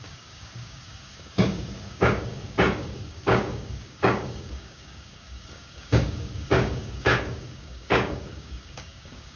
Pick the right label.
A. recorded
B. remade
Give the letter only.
B